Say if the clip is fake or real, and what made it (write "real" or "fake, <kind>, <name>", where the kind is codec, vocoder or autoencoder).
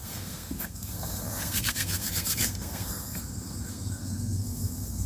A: fake, codec, SNAC